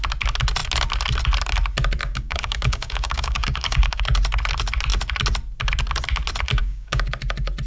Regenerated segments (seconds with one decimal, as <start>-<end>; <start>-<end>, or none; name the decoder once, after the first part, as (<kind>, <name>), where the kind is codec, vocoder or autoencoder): 2.0-4.0 (codec, DAC); 6.6-7.1